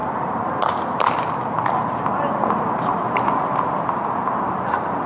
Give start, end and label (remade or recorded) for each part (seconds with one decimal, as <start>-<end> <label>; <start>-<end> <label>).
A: 0.0-3.0 remade; 3.0-5.1 recorded

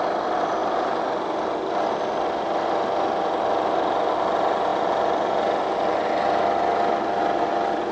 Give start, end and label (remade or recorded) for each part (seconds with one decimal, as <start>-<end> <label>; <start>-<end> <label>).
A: 0.0-7.9 recorded

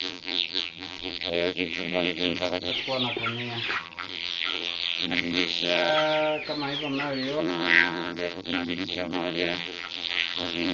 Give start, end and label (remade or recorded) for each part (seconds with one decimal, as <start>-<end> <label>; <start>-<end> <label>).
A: 0.0-2.7 remade; 2.7-3.8 recorded; 3.8-5.9 remade; 5.9-7.4 recorded; 7.4-10.7 remade

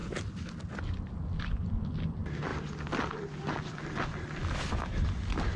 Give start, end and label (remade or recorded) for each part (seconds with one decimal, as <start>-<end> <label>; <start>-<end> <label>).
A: 0.0-5.6 recorded

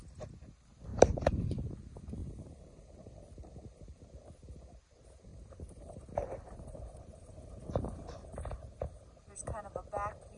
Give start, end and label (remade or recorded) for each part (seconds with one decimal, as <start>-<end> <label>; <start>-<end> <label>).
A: 0.0-0.9 recorded; 0.9-1.7 remade; 1.7-5.3 recorded; 5.3-9.3 remade; 9.3-10.4 recorded

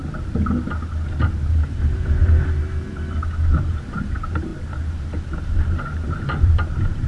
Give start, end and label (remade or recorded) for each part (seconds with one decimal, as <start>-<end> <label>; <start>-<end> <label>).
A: 0.0-1.4 recorded; 1.4-2.2 remade; 2.2-3.7 recorded; 3.7-4.5 remade; 4.5-5.4 recorded; 5.4-7.1 remade